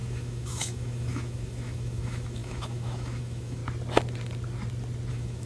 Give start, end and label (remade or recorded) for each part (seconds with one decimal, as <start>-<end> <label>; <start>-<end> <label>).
0.0-3.6 remade; 3.6-5.1 recorded; 5.1-5.5 remade